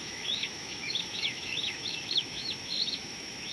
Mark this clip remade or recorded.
remade